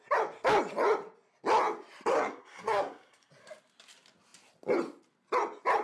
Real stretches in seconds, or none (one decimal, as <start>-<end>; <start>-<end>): 0.0-2.1; 3.3-5.8